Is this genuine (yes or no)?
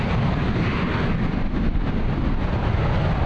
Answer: yes